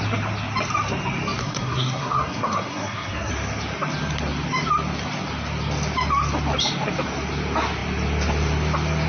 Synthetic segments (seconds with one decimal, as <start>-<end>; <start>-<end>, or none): 1.4-3.3